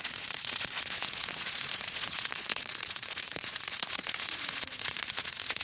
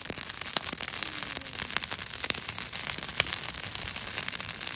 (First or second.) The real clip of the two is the second